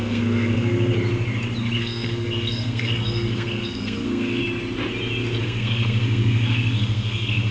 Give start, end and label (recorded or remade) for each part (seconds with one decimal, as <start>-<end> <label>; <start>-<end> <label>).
0.0-0.9 remade; 0.9-1.8 recorded; 1.8-4.4 remade; 4.4-5.4 recorded; 5.4-7.5 remade